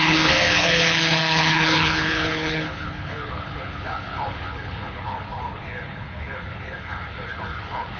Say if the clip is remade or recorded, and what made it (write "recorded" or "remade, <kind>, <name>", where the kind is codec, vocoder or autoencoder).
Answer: remade, codec, HILCodec